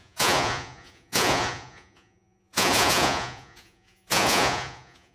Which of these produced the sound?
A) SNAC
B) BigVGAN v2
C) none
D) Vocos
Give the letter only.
D